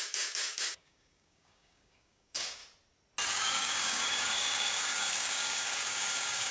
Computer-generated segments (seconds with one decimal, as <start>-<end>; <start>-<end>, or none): 0.0-2.6; 3.3-6.5